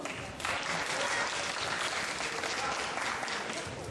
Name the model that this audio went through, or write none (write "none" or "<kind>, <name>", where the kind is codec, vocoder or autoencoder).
none